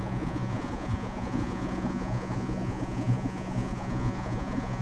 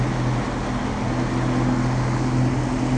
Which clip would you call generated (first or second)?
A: first